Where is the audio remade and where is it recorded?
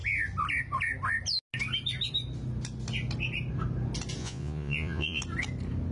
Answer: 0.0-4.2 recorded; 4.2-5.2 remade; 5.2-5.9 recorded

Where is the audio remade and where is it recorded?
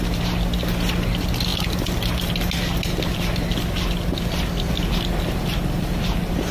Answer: 0.0-6.5 recorded